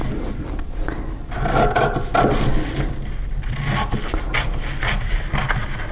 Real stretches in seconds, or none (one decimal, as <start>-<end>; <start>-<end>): 0.0-5.9